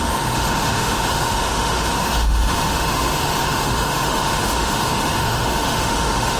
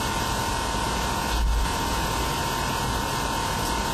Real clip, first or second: second